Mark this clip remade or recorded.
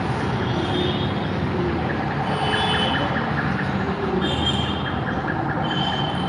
recorded